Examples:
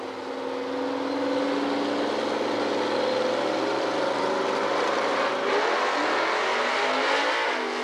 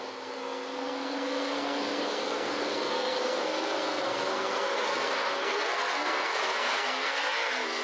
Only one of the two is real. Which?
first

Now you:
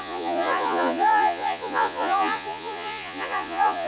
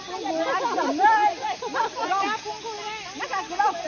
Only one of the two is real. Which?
second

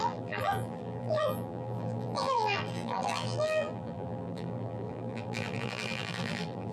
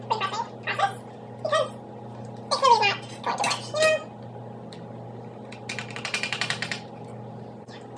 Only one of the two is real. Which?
second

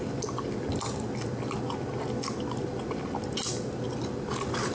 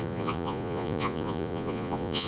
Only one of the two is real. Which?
first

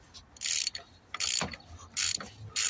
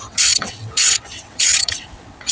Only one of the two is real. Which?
first